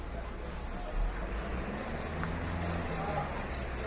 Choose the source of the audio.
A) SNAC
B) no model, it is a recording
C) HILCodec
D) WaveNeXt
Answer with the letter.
B